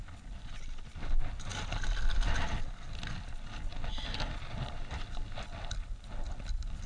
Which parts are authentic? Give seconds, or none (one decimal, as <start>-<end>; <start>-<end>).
0.0-6.9